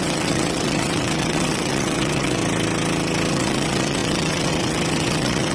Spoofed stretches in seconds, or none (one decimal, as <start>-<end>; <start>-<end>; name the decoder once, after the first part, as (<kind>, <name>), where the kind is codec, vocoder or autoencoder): 0.0-2.4 (vocoder, WaveNeXt); 3.3-5.5